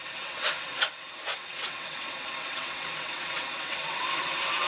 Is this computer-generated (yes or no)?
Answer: yes